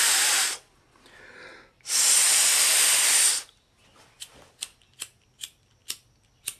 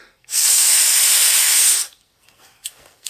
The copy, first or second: second